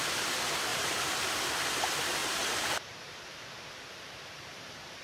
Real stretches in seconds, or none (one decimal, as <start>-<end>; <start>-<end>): 0.0-0.7; 1.4-2.2; 3.8-5.0

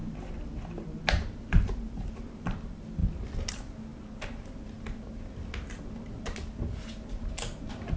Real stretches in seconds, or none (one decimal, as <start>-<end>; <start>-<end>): 2.1-8.0

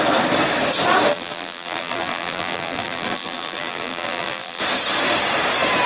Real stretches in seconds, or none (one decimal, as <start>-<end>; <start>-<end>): 0.0-1.1; 4.6-5.9

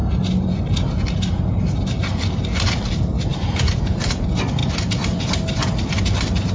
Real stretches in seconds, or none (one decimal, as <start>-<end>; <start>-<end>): 0.0-3.3; 4.1-6.5

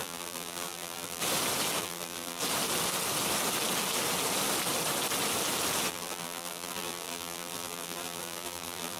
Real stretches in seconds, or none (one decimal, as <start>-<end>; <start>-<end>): 1.2-1.8; 2.4-5.9

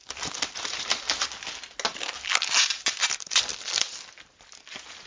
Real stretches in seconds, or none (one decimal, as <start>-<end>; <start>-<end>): 1.0-3.0; 3.5-5.1

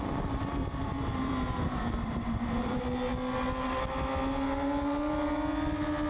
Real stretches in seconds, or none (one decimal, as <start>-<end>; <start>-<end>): 0.0-0.6; 2.8-6.1